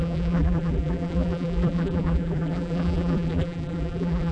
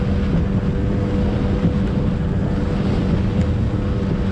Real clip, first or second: second